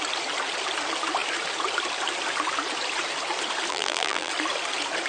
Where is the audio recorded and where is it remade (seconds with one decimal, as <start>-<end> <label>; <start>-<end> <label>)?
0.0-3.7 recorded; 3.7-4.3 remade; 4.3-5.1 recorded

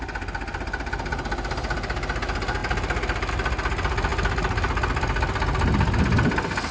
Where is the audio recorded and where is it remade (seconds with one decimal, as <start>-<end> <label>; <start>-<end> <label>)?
0.0-6.7 recorded

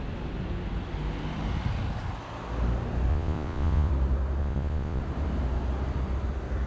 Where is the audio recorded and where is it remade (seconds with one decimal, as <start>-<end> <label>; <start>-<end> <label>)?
0.0-3.1 recorded; 3.1-3.9 remade; 3.9-4.4 recorded; 4.4-5.0 remade; 5.0-6.7 recorded

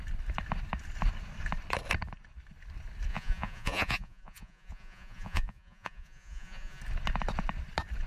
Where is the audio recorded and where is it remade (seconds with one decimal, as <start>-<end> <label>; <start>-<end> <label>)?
0.0-3.1 recorded; 3.1-6.8 remade; 6.8-8.1 recorded

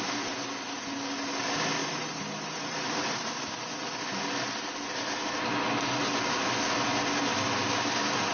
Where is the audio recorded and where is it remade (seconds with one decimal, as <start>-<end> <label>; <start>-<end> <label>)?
0.0-1.8 recorded; 1.8-3.4 remade; 3.4-8.3 recorded